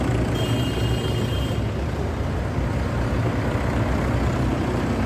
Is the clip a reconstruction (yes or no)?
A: no